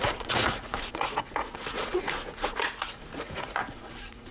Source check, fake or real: fake